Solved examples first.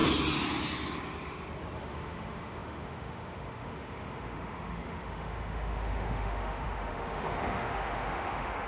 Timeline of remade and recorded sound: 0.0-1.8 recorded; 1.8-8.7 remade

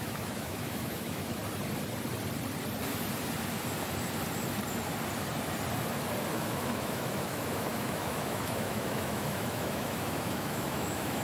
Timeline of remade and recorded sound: 0.0-1.4 remade; 1.4-6.3 recorded; 6.3-11.2 remade

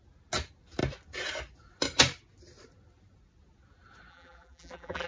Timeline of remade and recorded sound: 0.0-4.1 recorded; 4.1-5.1 remade

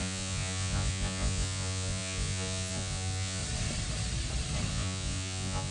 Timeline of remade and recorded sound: 0.0-3.4 remade; 3.4-4.7 recorded; 4.7-5.7 remade